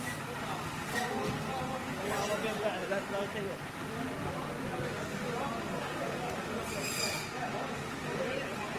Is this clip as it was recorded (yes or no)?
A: yes